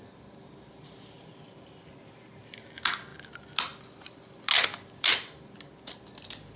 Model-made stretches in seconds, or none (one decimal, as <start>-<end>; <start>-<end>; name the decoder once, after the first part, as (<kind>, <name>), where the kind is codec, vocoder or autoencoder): none